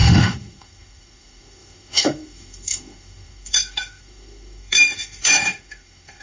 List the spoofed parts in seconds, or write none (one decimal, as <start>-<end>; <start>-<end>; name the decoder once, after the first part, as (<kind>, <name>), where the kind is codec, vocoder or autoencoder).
0.0-6.2 (autoencoder, DAC-VAE)

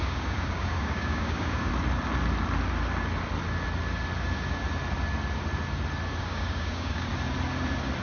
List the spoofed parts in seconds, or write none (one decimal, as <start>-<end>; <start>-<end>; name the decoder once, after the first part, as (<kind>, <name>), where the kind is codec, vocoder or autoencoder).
0.0-1.7 (codec, DAC); 6.2-7.1

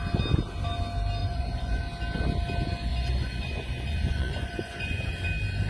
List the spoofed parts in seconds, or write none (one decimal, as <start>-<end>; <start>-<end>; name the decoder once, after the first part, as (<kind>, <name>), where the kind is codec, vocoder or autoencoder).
1.2-1.8 (vocoder, Vocos); 2.9-5.1

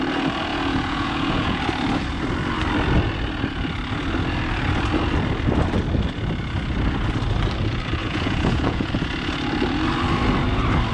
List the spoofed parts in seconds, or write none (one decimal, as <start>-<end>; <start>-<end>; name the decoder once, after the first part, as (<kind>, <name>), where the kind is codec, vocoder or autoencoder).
0.5-1.6 (vocoder, Vocos); 8.0-8.9